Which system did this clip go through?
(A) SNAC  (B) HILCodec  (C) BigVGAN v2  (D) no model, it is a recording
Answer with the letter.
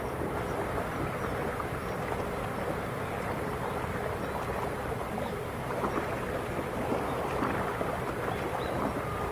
C